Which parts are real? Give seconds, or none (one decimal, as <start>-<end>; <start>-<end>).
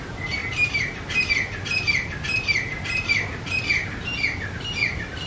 0.0-5.3